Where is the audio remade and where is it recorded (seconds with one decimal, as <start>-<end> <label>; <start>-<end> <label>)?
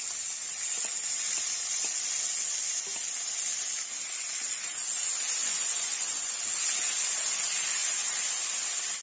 0.0-5.4 recorded; 5.4-6.4 remade; 6.4-9.0 recorded